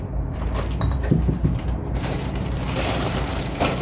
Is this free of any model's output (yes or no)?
no